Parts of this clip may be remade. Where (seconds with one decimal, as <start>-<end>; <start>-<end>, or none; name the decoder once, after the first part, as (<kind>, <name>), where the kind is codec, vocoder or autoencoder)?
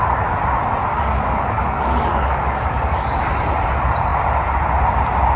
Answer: 0.9-3.2 (codec, DAC)